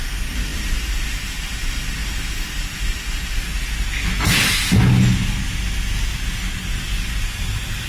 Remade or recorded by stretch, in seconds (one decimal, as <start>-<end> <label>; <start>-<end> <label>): 0.0-7.9 recorded